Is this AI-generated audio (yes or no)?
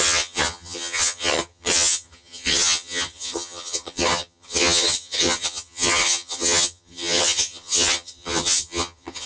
yes